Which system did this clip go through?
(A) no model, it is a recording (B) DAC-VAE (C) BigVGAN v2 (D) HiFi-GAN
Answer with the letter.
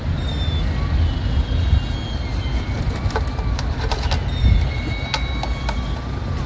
A